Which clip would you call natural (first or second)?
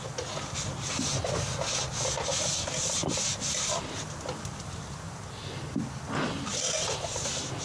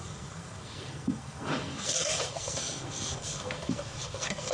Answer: first